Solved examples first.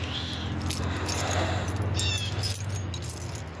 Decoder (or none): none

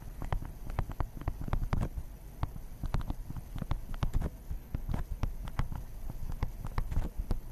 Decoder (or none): none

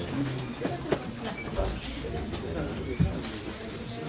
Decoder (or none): none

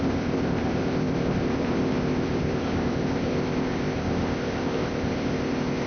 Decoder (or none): codec, ZipCodec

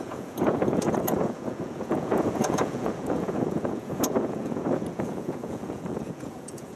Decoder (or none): vocoder, Vocos